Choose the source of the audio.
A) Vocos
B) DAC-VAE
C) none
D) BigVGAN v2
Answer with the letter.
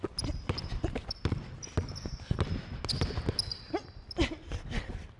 C